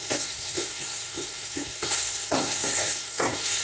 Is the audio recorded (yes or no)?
no